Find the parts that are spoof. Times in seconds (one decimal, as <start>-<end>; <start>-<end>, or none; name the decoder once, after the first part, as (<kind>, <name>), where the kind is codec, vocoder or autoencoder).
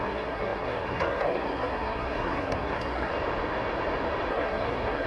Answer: 0.0-3.1 (codec, SNAC); 4.3-5.1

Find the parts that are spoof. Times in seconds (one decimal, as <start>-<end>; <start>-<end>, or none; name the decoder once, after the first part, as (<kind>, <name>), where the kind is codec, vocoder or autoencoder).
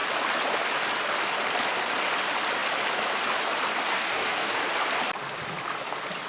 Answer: 3.9-4.6 (codec, DAC)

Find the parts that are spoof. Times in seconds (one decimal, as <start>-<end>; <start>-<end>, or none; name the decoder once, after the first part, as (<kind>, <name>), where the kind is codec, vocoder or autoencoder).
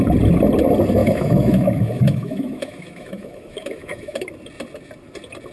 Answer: 1.0-4.3 (autoencoder, DAC-VAE)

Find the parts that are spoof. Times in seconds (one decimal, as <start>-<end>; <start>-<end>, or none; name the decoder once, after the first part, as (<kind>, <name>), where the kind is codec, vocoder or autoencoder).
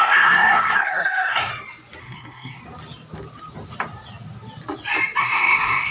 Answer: 0.0-1.5 (codec, SNAC); 2.0-2.6; 5.2-5.9